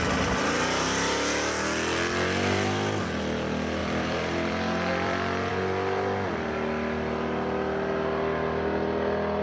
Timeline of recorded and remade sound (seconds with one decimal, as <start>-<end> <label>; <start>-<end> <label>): 0.0-3.8 recorded; 3.8-5.5 remade; 5.5-9.4 recorded